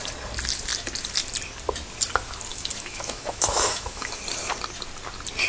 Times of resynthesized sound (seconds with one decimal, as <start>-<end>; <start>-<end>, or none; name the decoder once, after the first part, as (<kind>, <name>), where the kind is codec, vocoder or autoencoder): 2.5-4.2 (autoencoder, DAC-VAE)